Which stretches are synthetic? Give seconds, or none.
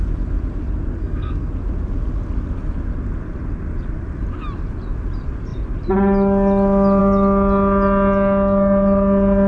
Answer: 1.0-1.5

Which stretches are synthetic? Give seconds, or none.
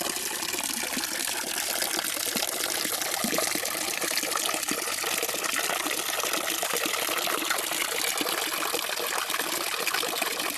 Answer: none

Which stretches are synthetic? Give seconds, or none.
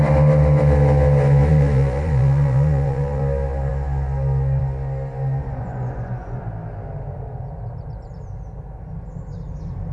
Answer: 1.4-3.2; 5.4-6.4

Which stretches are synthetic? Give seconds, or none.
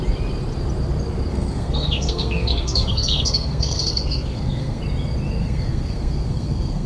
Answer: 1.3-4.8; 5.4-6.9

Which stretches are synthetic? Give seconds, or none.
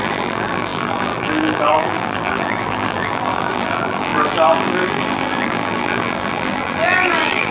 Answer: 0.0-7.5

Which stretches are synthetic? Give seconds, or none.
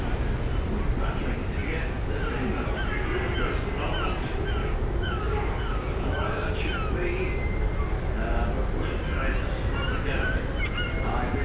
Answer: 4.6-6.5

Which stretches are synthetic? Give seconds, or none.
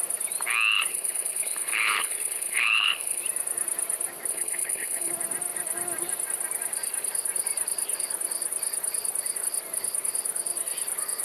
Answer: 0.9-3.2; 4.3-5.1